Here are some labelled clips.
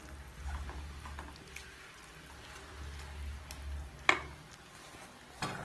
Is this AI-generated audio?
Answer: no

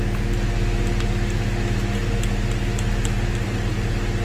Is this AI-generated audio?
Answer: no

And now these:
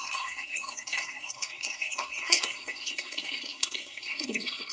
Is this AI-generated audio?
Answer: yes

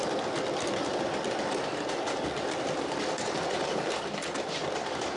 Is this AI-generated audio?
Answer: no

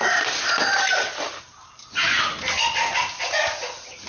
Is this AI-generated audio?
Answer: no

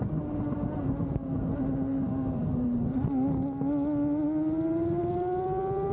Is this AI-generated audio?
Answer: no